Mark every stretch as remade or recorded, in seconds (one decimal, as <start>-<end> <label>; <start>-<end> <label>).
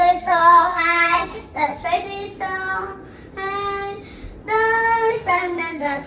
0.0-1.8 remade; 1.8-5.1 recorded; 5.1-6.1 remade